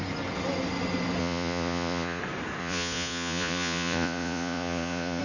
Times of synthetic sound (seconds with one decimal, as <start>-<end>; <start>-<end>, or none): 1.2-2.2; 2.6-5.2

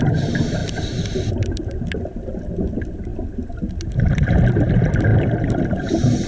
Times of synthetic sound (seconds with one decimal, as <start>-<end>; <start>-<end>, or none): none

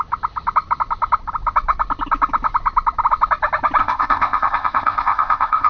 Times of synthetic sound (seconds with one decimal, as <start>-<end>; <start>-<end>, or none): 3.8-5.7

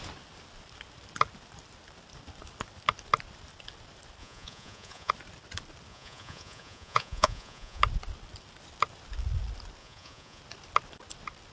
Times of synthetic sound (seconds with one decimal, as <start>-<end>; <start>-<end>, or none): 4.2-5.1; 5.9-7.8; 9.8-10.4

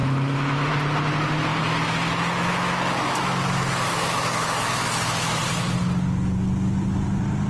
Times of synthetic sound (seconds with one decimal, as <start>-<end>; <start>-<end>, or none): 0.0-0.7; 1.6-5.4